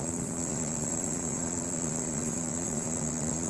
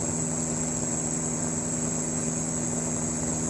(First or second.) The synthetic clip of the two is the first